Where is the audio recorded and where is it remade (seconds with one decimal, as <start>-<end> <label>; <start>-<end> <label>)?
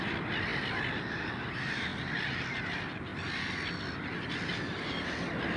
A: 0.0-5.6 recorded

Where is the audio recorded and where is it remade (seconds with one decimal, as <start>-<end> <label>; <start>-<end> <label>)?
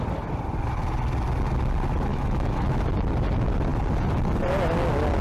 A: 0.0-2.1 recorded; 2.1-2.8 remade; 2.8-5.2 recorded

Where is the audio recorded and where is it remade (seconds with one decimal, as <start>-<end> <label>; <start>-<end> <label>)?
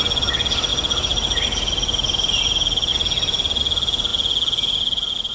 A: 0.0-5.3 recorded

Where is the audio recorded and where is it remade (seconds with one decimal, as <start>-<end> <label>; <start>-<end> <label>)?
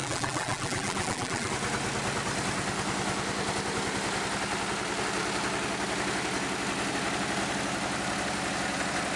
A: 0.0-1.5 remade; 1.5-9.2 recorded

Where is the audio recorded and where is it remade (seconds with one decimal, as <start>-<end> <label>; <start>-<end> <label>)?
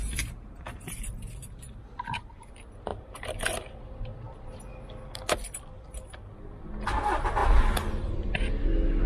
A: 0.0-2.5 remade; 2.5-2.9 recorded; 2.9-4.6 remade; 4.6-9.1 recorded